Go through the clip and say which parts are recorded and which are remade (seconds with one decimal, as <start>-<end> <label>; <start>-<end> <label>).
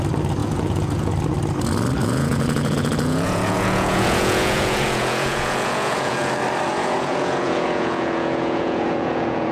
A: 0.0-0.4 recorded; 0.4-1.1 remade; 1.1-2.0 recorded; 2.0-6.3 remade; 6.3-6.7 recorded; 6.7-9.5 remade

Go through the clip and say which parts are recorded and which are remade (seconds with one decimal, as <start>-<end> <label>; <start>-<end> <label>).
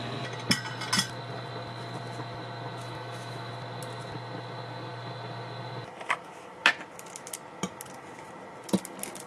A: 0.0-2.8 recorded; 2.8-3.5 remade; 3.5-9.3 recorded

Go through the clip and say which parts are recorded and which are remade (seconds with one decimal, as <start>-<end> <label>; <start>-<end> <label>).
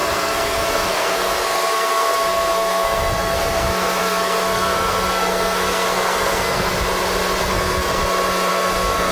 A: 0.0-6.7 remade; 6.7-7.4 recorded; 7.4-8.0 remade; 8.0-8.5 recorded; 8.5-9.1 remade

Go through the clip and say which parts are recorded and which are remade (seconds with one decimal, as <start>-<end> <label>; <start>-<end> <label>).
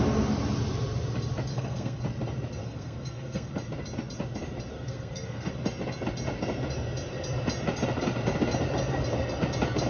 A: 0.0-1.5 recorded; 1.5-2.0 remade; 2.0-2.6 recorded; 2.6-3.5 remade; 3.5-4.7 recorded; 4.7-5.5 remade; 5.5-9.9 recorded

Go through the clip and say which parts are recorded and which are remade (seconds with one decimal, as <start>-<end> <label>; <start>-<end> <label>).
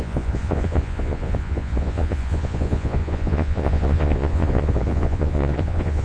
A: 0.0-6.0 remade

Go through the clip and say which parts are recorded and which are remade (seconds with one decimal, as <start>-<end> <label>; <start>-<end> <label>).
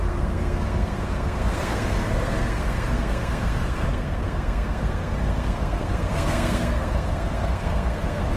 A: 0.0-8.4 remade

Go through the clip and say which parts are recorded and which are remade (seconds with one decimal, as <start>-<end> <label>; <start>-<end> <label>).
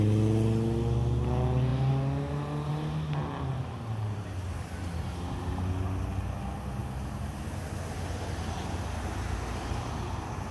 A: 0.0-10.5 recorded